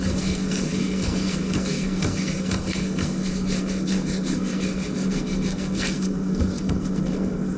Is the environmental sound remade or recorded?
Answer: remade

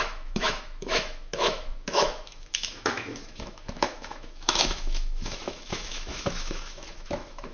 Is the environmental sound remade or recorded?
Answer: remade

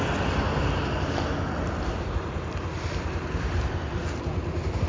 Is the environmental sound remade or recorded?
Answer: recorded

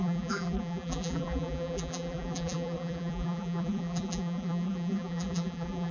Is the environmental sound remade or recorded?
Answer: remade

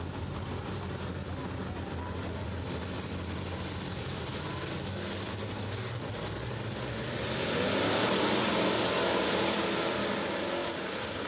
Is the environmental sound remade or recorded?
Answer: recorded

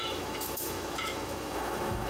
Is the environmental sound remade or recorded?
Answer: remade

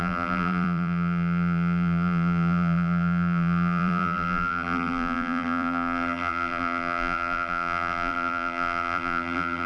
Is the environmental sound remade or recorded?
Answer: remade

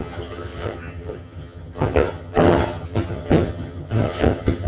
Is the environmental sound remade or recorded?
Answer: remade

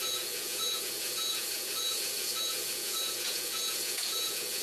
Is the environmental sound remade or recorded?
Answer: remade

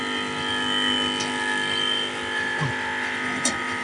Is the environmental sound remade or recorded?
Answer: recorded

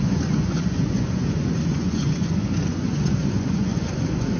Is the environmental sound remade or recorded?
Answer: remade